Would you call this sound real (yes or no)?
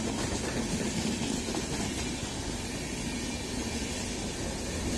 yes